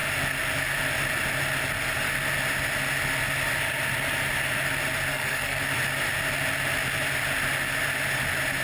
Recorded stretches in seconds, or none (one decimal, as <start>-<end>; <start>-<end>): 0.0-5.1; 5.6-8.6